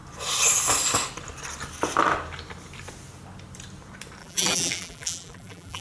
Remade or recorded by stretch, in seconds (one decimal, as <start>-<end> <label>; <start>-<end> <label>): 0.0-4.2 recorded; 4.2-5.8 remade

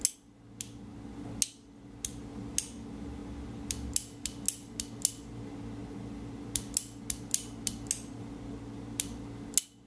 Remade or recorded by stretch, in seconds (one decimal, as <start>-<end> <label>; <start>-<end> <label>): 0.0-9.9 recorded

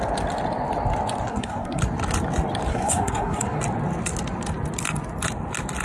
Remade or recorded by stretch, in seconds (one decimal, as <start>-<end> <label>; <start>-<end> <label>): 0.0-1.3 recorded; 1.3-1.8 remade; 1.8-2.7 recorded; 2.7-3.6 remade; 3.6-5.8 recorded